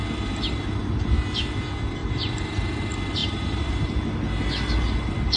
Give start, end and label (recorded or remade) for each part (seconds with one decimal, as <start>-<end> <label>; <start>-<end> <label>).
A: 0.0-2.0 recorded; 2.0-2.8 remade; 2.8-3.2 recorded; 3.2-4.0 remade; 4.0-5.4 recorded